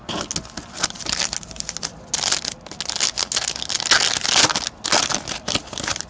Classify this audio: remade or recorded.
recorded